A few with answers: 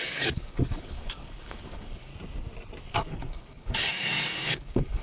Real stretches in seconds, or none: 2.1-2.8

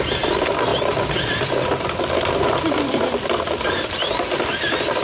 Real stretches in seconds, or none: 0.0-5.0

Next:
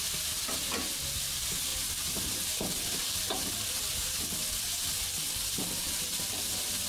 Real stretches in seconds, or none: 0.0-6.9

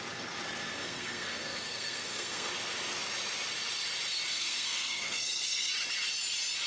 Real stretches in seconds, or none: 0.0-0.8; 2.5-4.3; 5.7-6.7

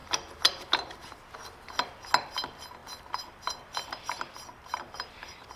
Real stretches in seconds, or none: 0.0-5.6

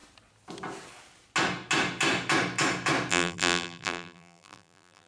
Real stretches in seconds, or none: 0.0-3.1